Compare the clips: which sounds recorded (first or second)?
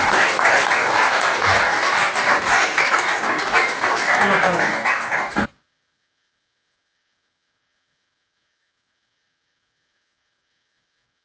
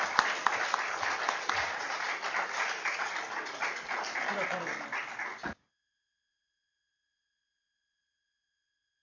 second